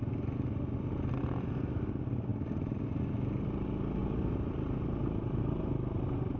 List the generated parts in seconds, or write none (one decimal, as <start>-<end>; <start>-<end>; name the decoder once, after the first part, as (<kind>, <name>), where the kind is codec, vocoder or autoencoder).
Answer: 2.3-3.0 (vocoder, BigVGAN v2); 4.0-5.4